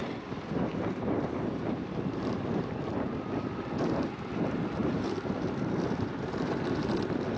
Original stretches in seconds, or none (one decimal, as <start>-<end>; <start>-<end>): 0.0-0.7; 2.9-4.8; 6.9-7.4